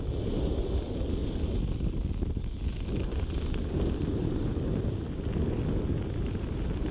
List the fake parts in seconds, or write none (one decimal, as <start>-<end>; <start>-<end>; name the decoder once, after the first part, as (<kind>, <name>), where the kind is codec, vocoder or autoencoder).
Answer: none